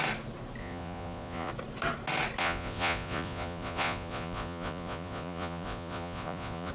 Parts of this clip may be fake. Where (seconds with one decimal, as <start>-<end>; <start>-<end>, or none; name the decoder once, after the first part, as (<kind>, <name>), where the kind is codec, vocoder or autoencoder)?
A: 0.6-1.5 (vocoder, Vocos); 2.4-6.7